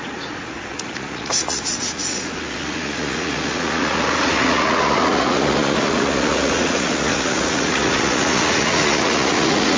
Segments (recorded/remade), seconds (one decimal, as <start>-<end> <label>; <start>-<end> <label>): 0.0-9.8 remade